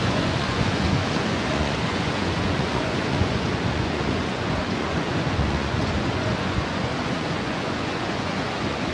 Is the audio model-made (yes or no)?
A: yes